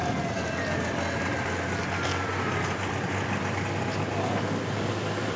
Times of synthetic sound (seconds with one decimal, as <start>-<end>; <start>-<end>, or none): none